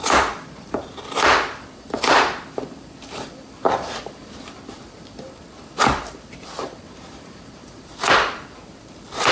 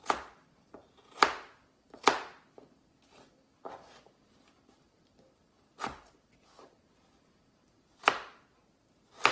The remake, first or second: first